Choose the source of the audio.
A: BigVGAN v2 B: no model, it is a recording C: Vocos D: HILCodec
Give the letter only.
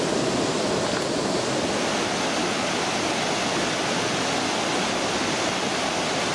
B